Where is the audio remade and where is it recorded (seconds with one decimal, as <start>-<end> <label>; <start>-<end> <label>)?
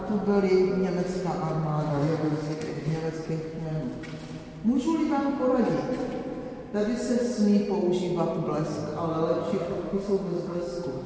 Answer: 0.0-1.9 recorded; 1.9-2.7 remade; 2.7-9.6 recorded; 9.6-10.6 remade; 10.6-11.1 recorded